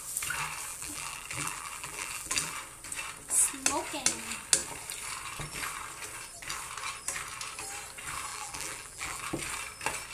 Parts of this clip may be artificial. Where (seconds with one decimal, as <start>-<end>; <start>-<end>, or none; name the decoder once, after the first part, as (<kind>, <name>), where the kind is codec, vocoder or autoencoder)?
0.7-2.5 (vocoder, BigVGAN v2); 8.3-9.2